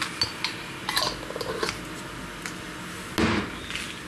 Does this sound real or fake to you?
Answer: real